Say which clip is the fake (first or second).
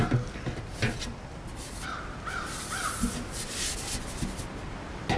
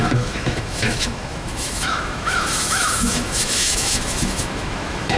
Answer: second